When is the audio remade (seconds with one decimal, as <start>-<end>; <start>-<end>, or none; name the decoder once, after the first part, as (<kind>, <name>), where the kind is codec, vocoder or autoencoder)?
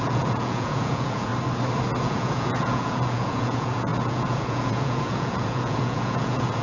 0.0-1.3 (vocoder, Vocos); 2.0-6.6